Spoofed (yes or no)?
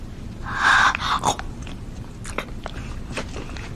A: no